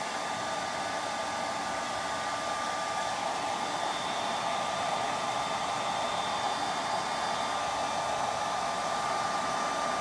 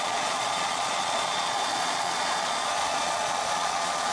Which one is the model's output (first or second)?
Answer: second